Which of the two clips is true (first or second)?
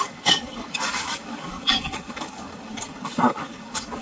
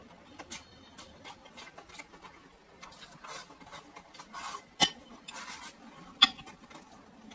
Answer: second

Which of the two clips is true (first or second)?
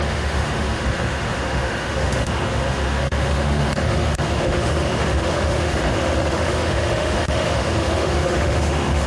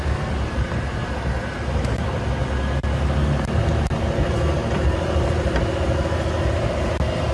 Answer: second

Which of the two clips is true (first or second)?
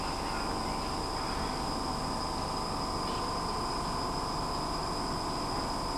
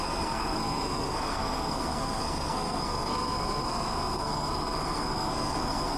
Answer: first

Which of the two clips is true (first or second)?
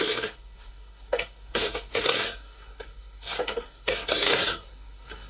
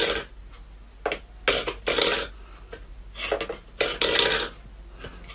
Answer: second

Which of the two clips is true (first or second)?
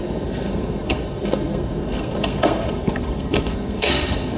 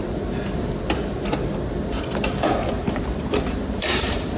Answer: second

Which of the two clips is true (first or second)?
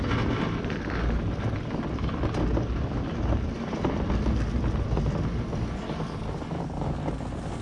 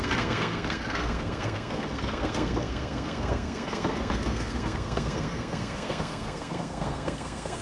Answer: first